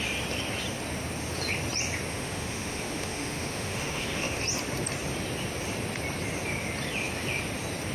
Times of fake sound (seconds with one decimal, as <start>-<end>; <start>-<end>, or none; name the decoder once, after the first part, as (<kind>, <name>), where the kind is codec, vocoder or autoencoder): 2.1-4.4 (autoencoder, DAC-VAE)